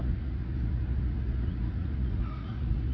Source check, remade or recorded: remade